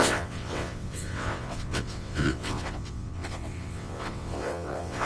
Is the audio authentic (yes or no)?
no